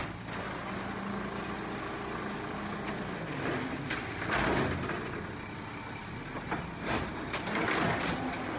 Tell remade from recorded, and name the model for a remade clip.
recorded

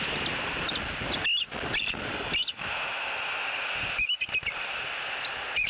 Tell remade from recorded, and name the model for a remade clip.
recorded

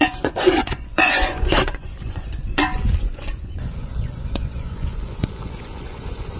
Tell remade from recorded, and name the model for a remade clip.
remade, vocoder, Vocos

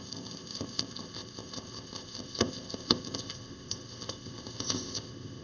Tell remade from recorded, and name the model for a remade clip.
remade, codec, ZipCodec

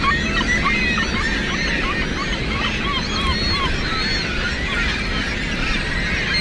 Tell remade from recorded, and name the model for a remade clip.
recorded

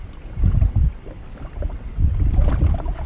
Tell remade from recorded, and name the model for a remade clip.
recorded